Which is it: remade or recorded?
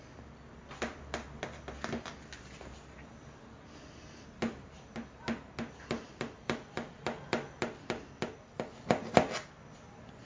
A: recorded